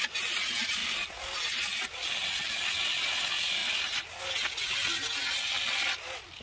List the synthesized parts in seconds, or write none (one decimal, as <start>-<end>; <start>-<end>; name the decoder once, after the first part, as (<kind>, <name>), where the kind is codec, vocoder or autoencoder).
none